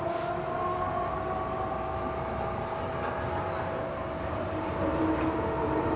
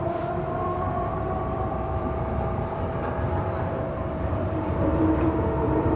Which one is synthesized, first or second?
second